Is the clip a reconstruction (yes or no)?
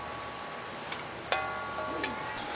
no